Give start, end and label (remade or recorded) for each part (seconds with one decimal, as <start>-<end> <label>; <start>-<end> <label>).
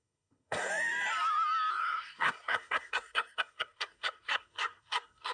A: 0.0-0.7 remade; 0.7-1.7 recorded; 1.7-5.3 remade